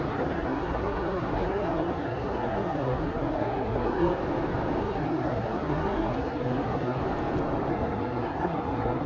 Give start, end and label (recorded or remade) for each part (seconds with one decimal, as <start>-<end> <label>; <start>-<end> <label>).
0.0-4.2 remade; 4.2-4.8 recorded; 4.8-7.0 remade; 7.0-7.7 recorded; 7.7-9.1 remade